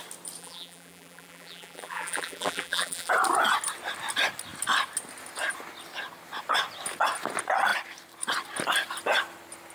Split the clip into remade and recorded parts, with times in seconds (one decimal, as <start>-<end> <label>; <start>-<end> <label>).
0.0-0.4 recorded; 0.4-3.1 remade; 3.1-9.7 recorded